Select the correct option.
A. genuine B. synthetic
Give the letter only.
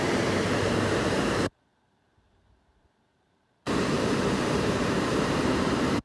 B